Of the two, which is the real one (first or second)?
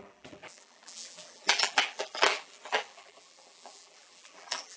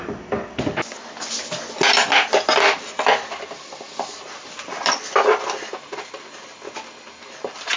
second